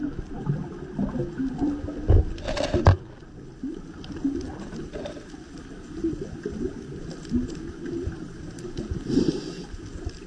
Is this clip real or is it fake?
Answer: real